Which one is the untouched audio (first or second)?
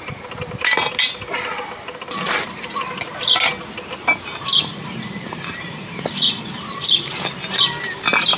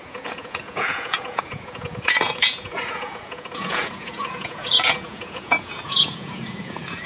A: first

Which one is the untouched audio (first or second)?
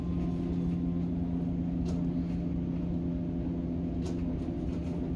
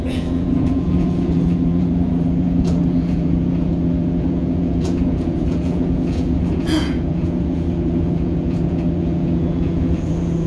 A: first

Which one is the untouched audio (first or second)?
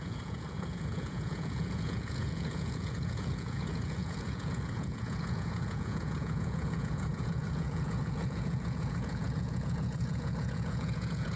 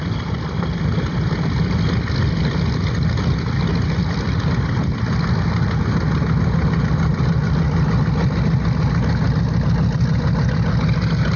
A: second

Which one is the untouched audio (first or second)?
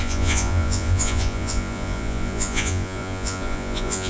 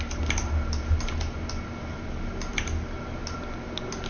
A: second